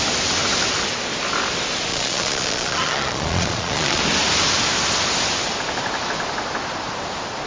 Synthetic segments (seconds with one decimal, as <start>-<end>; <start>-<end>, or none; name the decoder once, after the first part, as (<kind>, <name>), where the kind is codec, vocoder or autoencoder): 1.9-4.0 (vocoder, Vocos)